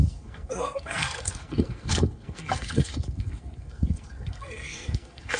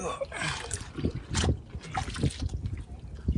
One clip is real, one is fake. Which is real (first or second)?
second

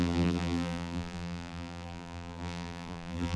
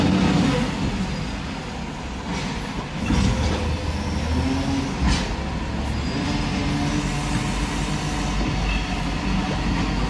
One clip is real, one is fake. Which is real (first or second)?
second